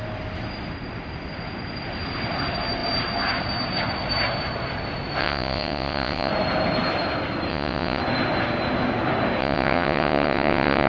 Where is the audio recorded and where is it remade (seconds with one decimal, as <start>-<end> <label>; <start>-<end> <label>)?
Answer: 0.0-5.2 recorded; 5.2-6.3 remade; 6.3-7.5 recorded; 7.5-8.0 remade; 8.0-9.4 recorded; 9.4-10.9 remade